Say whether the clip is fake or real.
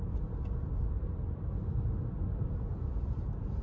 real